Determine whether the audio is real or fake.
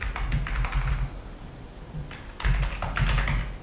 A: real